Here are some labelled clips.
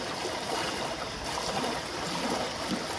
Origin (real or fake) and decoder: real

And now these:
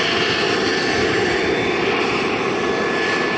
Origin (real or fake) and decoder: real